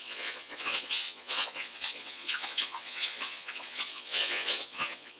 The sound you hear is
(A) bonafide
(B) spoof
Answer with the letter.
B